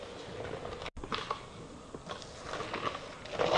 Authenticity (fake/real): real